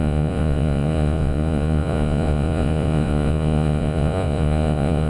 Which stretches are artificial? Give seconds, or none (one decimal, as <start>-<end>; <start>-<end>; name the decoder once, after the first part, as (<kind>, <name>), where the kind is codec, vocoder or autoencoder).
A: 0.0-5.1 (vocoder, Vocos)